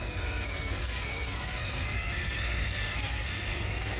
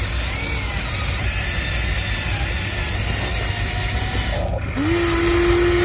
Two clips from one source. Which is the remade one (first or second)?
first